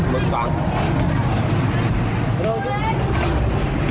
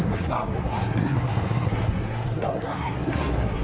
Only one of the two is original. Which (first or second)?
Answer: first